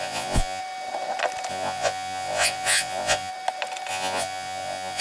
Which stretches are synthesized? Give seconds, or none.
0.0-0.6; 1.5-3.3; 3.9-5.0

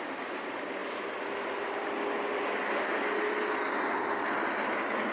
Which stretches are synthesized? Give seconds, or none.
none